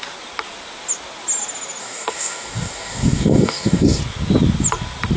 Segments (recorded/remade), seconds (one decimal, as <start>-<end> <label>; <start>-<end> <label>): 0.0-1.8 recorded; 1.8-4.0 remade; 4.0-5.2 recorded